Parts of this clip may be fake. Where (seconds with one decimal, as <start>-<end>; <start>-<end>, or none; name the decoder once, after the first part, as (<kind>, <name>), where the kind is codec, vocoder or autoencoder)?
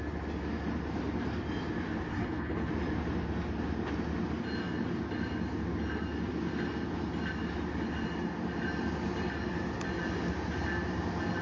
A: 2.1-2.7 (codec, HILCodec)